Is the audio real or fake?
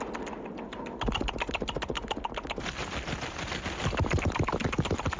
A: real